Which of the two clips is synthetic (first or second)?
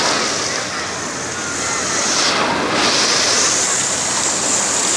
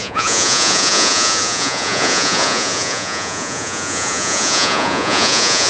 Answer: second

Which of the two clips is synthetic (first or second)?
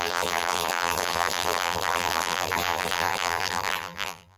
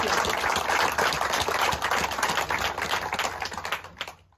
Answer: first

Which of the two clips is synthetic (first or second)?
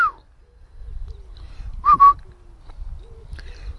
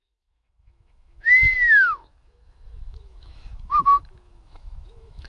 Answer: second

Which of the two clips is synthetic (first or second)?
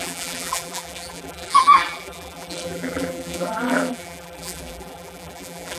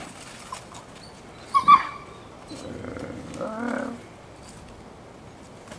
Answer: first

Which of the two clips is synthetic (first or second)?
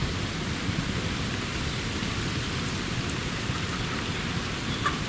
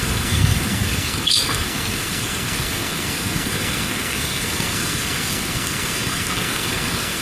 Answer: second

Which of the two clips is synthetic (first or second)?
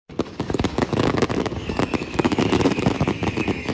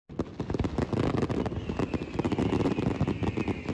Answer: first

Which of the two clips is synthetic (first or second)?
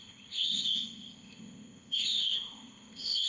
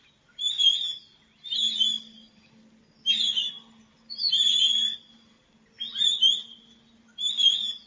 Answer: first